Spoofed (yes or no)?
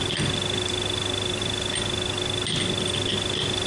no